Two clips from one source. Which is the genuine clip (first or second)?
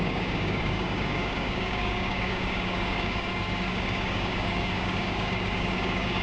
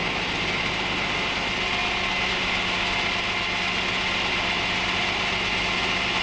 second